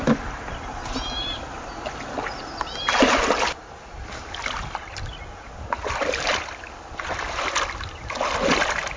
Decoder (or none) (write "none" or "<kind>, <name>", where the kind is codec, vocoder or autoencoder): none